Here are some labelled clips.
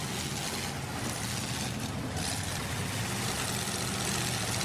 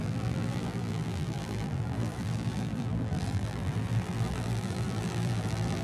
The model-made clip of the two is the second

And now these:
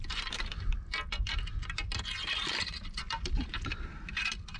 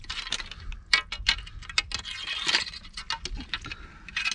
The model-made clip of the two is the first